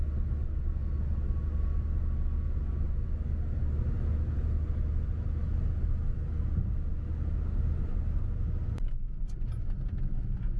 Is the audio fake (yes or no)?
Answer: no